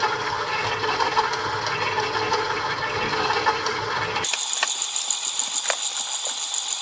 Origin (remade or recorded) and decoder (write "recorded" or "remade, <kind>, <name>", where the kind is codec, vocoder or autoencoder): recorded